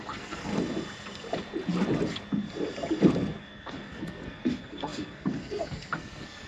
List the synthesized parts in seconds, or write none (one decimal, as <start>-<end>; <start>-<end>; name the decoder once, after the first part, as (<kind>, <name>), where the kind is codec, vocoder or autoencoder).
0.0-0.5 (codec, SNAC); 3.4-6.5